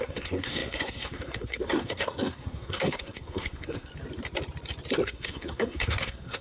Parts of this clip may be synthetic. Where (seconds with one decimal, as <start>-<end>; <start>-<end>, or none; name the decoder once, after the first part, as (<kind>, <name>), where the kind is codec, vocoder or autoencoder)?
0.0-3.9 (codec, SNAC); 4.9-6.4